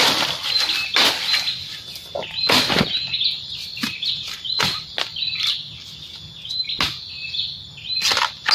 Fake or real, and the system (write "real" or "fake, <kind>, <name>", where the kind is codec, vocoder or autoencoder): real